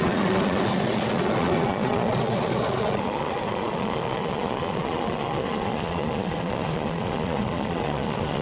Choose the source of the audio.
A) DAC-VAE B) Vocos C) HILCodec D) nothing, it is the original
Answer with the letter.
B